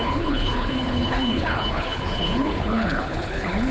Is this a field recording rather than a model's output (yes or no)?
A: no